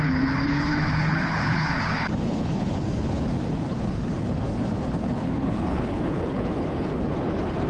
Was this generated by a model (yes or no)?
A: yes